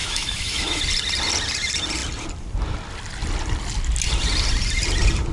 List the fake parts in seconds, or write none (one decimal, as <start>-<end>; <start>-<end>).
0.0-0.8